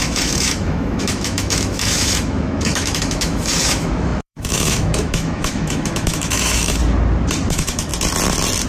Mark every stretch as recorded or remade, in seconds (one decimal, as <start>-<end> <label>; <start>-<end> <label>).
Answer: 0.0-6.8 remade; 6.8-7.5 recorded; 7.5-7.9 remade; 7.9-8.7 recorded

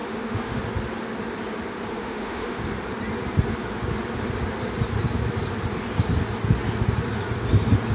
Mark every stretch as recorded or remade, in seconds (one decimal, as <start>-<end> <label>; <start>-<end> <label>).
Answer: 0.0-0.6 remade; 0.6-1.9 recorded; 1.9-2.6 remade; 2.6-7.9 recorded

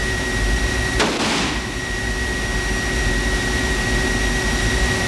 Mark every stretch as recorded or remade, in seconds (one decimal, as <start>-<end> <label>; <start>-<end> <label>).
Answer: 0.0-5.1 recorded

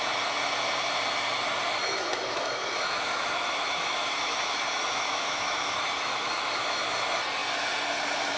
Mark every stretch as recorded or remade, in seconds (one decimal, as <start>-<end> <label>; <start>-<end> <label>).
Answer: 0.0-1.8 recorded; 1.8-6.8 remade; 6.8-8.4 recorded